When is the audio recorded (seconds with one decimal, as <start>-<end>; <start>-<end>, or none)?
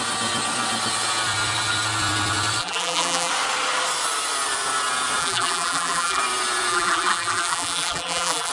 0.0-2.6; 3.3-5.2; 6.2-6.7